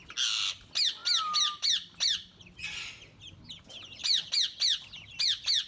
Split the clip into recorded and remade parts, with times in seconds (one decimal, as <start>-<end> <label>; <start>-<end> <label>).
0.0-5.7 recorded